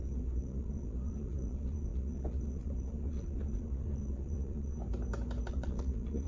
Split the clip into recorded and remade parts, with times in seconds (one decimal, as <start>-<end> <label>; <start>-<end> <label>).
0.0-4.8 remade; 4.8-5.5 recorded; 5.5-6.3 remade